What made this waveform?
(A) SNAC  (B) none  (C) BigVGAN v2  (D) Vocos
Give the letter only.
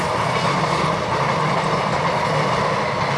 B